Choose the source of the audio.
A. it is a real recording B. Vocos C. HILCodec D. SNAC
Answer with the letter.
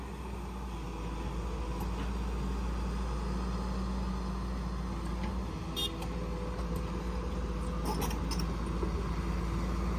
A